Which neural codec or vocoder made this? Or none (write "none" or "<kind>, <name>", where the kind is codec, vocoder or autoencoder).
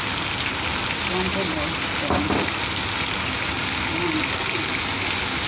none